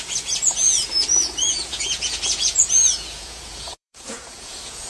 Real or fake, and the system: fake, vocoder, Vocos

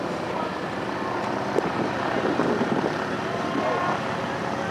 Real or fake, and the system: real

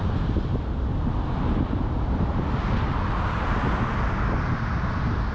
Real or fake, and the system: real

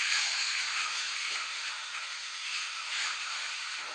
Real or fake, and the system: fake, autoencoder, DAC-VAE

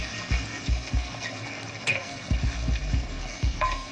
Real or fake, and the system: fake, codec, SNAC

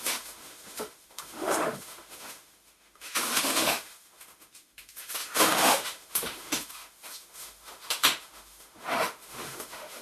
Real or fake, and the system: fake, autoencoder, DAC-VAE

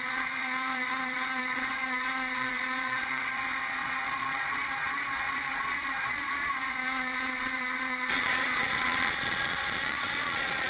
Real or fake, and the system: fake, vocoder, Vocos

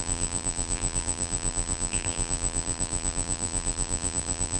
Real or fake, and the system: fake, vocoder, BigVGAN v2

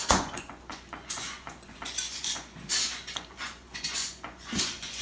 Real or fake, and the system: fake, vocoder, Vocos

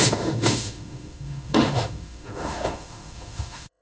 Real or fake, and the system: fake, autoencoder, DAC-VAE